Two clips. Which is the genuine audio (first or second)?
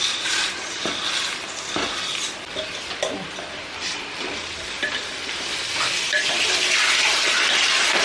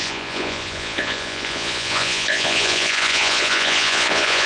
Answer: first